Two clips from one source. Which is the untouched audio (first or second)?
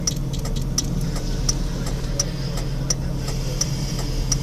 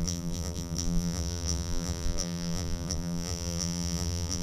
first